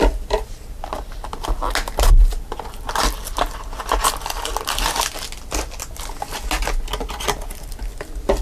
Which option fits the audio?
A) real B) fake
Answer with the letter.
A